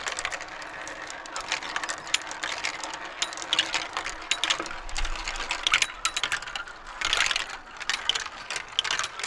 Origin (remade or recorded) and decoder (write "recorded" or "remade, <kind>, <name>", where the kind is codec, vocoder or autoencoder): recorded